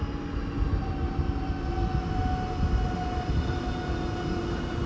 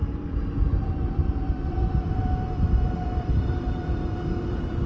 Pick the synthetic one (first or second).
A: second